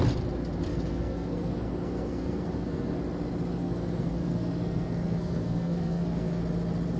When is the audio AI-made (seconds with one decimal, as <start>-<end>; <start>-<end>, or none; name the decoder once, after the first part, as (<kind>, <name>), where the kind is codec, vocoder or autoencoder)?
0.7-3.0 (codec, SNAC); 3.6-6.4